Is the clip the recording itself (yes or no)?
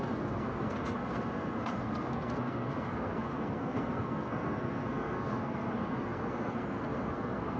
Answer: no